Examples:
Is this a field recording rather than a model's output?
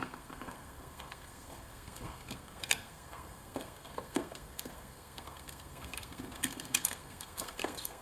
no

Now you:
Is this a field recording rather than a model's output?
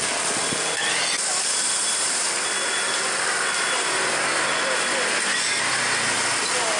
yes